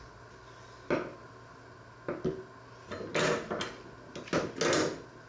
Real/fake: real